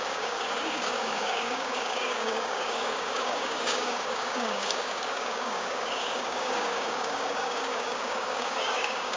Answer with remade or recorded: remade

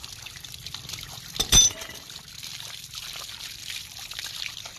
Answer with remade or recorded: remade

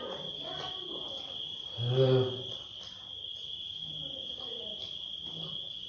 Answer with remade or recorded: recorded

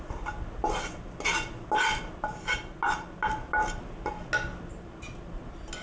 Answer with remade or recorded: recorded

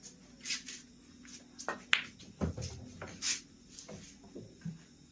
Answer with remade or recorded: recorded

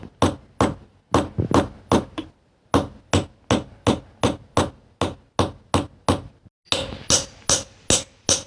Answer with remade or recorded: recorded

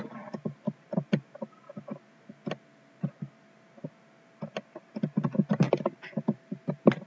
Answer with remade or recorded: recorded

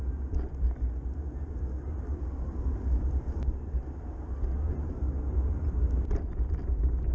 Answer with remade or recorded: recorded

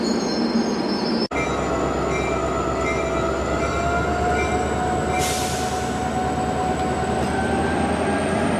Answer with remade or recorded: recorded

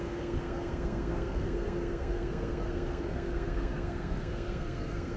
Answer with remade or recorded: remade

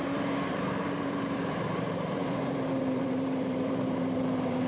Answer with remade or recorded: remade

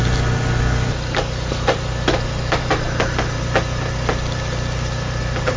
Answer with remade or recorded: recorded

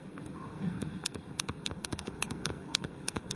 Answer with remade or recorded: remade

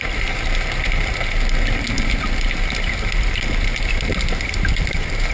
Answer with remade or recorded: recorded